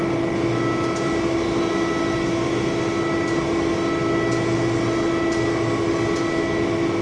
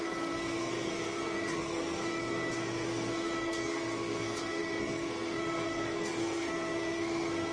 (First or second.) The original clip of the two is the first